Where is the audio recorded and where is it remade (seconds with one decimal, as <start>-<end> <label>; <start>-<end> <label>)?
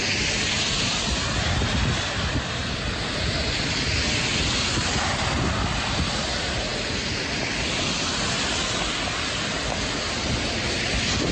0.0-11.3 recorded